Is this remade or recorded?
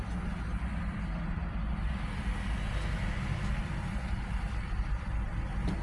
recorded